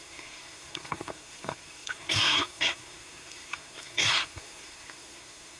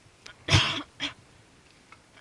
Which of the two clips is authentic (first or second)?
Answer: second